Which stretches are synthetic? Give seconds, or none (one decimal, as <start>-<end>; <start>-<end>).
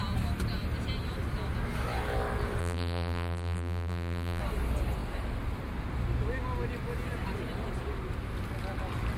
2.6-4.4